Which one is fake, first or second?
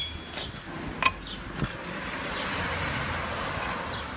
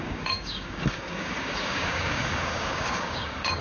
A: second